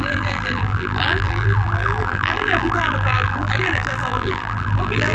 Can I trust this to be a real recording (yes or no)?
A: no